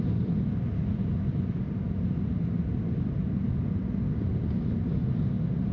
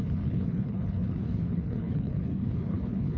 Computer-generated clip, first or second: second